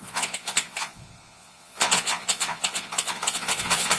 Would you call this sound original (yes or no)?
no